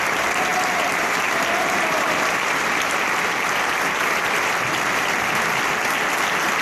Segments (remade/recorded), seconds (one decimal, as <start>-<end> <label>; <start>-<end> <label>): 0.0-6.6 recorded